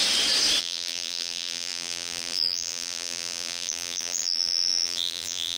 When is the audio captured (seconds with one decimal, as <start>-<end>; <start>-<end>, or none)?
0.0-0.6